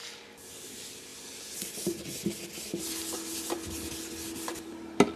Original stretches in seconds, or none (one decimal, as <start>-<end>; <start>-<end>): 0.0-5.2